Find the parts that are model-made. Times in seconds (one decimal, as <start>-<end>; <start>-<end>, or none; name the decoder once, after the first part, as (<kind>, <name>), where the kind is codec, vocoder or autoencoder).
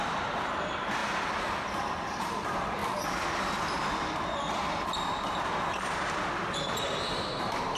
0.0-1.0 (vocoder, BigVGAN v2); 2.2-2.8; 6.6-7.8